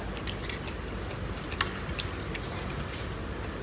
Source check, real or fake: real